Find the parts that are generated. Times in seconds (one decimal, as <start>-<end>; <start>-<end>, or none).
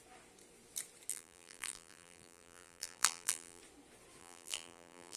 1.1-3.6; 4.2-5.2